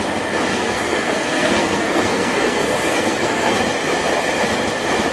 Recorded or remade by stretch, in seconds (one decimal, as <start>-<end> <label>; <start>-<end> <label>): 0.0-0.5 recorded; 0.5-3.6 remade; 3.6-5.1 recorded